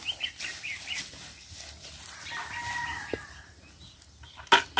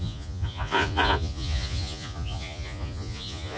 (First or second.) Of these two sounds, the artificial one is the second